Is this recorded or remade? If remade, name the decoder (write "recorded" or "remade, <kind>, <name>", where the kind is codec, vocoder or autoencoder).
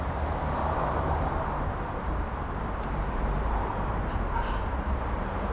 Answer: remade, vocoder, BigVGAN v2